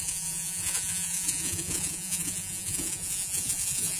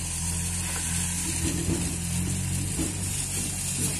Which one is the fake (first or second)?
first